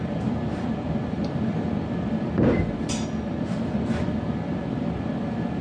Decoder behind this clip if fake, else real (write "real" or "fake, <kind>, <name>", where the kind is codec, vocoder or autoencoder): fake, vocoder, BigVGAN v2